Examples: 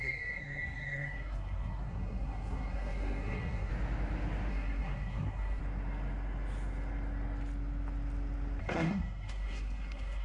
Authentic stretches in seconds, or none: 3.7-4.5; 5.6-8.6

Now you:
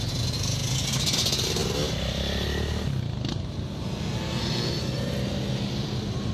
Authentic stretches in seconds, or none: 0.0-0.6; 1.2-6.3

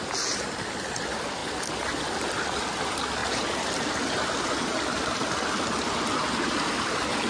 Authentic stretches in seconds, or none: 0.0-7.3

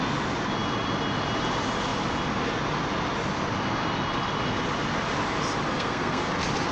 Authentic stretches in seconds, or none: 0.0-5.7; 6.3-6.7

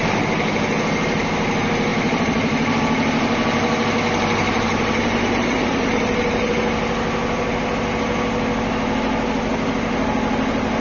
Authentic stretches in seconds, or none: 0.0-1.9; 2.8-4.4; 6.5-10.8

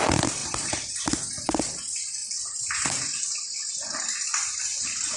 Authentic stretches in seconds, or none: 0.0-0.4; 1.0-2.2; 2.8-5.2

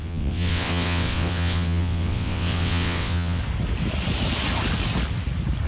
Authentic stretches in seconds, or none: 3.4-5.7

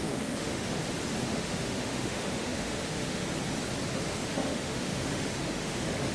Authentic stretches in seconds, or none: 0.8-1.3; 3.2-3.9